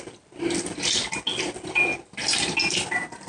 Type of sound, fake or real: real